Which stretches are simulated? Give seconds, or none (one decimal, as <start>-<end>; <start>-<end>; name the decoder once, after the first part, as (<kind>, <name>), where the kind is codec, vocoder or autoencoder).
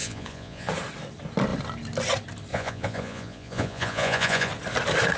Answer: 0.0-0.7 (vocoder, Vocos); 2.5-4.5